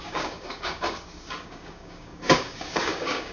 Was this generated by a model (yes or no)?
yes